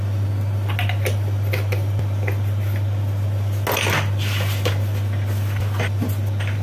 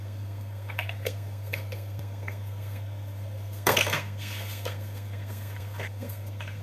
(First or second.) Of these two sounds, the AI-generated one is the second